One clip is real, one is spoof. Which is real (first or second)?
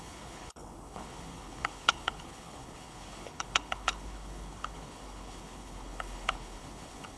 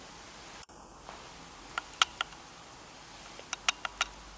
second